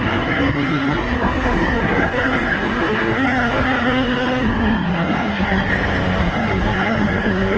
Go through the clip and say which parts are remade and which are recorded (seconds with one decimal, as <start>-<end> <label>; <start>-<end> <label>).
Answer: 0.0-5.7 remade; 5.7-6.2 recorded; 6.2-7.6 remade